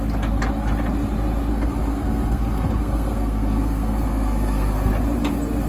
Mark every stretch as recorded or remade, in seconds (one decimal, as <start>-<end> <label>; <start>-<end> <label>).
0.0-1.5 recorded; 1.5-4.9 remade; 4.9-5.7 recorded